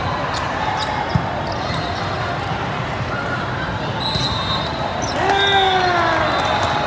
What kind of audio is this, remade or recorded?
recorded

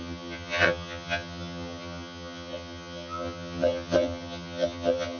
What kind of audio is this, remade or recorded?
remade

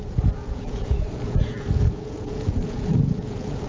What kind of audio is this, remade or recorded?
remade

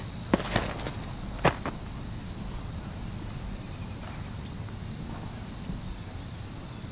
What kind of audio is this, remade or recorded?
recorded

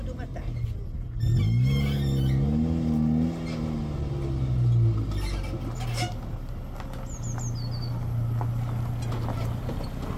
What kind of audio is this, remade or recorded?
recorded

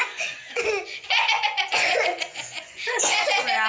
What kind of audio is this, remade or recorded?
remade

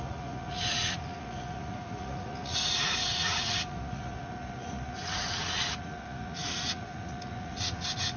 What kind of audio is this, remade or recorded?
remade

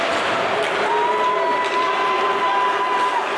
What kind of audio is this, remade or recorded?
recorded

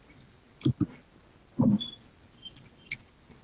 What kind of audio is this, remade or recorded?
recorded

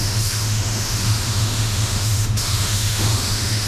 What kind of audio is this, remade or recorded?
remade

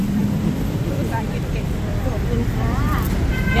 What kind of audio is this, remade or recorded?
remade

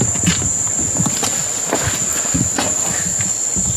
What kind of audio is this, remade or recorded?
recorded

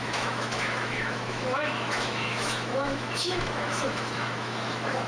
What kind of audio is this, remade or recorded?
remade